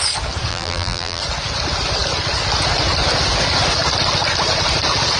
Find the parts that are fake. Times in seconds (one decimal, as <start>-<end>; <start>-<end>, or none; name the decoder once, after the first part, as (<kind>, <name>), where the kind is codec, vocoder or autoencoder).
0.5-1.2 (vocoder, BigVGAN v2)